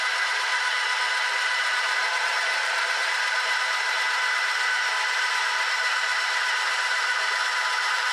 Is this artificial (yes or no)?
yes